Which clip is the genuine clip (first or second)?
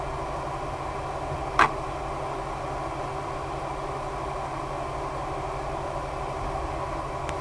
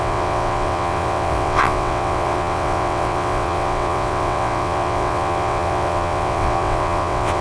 first